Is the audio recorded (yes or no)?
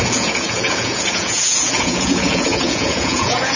no